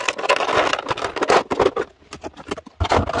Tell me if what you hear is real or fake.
real